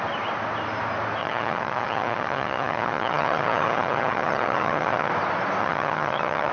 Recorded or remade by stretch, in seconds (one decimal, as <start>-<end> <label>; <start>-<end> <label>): 0.0-1.2 recorded; 1.2-5.1 remade; 5.1-5.6 recorded; 5.6-6.5 remade

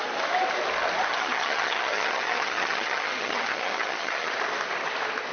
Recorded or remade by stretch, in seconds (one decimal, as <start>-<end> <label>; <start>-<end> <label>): 0.0-1.1 recorded; 1.1-4.3 remade; 4.3-5.3 recorded

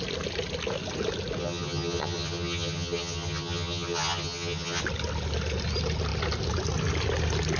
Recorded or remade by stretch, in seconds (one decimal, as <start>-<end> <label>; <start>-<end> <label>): 0.0-1.4 recorded; 1.4-4.8 remade; 4.8-7.6 recorded